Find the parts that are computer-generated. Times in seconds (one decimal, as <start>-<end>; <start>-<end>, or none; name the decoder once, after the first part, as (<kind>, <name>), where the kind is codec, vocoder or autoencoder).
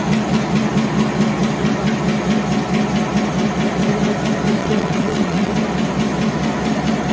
4.6-5.5 (vocoder, WaveNeXt)